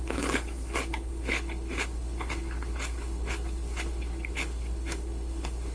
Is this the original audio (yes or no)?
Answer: no